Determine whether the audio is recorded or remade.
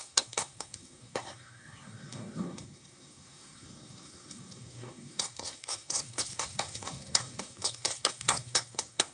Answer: remade